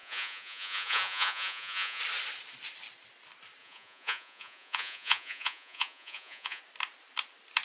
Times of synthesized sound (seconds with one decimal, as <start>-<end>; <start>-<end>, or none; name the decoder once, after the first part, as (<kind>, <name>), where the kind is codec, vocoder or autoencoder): 0.0-2.0 (vocoder, Vocos); 3.6-6.6